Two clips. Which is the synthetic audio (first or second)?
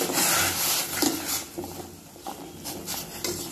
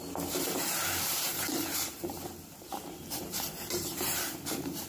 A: second